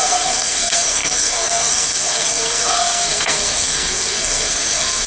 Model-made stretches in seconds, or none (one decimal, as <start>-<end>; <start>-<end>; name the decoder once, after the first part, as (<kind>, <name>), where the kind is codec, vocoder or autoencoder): 0.0-5.1 (codec, SNAC)